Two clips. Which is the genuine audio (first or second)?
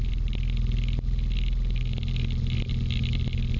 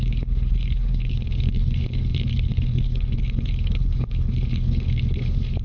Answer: first